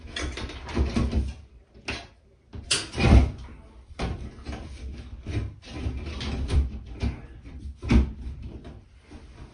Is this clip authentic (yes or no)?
yes